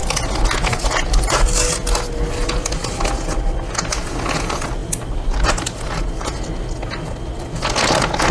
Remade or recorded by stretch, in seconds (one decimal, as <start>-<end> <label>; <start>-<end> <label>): 0.0-8.3 recorded